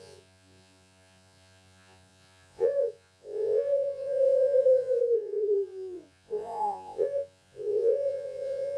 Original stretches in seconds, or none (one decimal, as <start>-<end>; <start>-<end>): none